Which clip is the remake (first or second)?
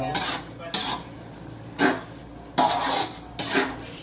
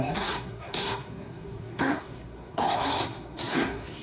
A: second